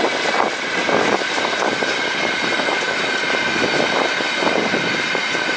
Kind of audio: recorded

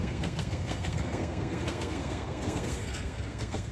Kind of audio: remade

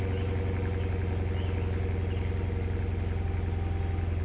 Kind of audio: recorded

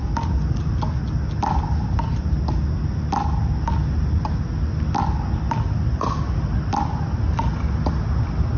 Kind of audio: recorded